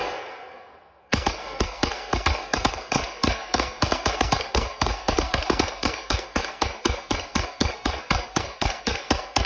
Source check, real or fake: fake